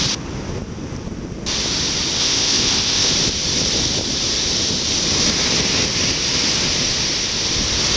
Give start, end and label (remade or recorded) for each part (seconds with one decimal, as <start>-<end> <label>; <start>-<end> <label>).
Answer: 0.0-2.2 recorded; 2.2-3.1 remade; 3.1-8.0 recorded